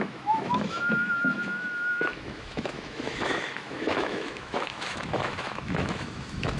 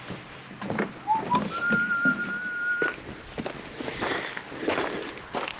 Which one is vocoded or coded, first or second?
first